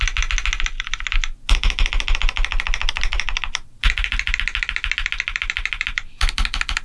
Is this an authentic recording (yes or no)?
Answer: yes